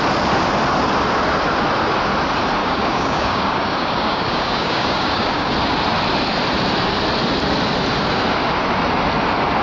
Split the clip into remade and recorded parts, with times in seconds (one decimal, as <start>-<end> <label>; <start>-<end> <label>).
0.0-2.6 recorded; 2.6-5.5 remade; 5.5-9.6 recorded